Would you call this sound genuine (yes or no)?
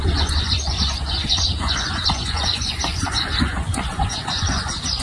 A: no